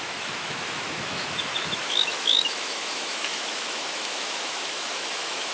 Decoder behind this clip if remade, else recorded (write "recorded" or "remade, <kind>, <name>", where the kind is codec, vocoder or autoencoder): remade, autoencoder, DAC-VAE